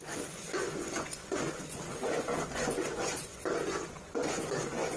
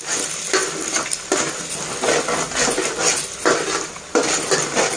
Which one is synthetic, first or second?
first